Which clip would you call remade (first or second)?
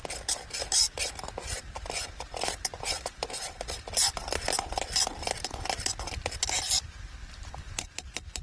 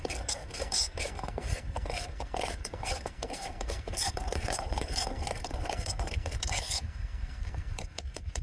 second